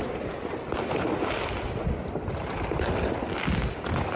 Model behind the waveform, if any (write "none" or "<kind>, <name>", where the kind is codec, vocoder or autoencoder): none